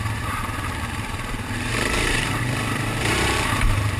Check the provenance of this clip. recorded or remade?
remade